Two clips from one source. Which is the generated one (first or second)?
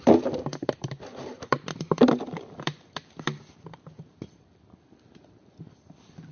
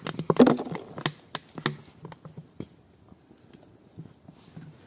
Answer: first